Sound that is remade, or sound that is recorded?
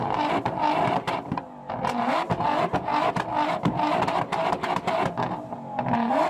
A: recorded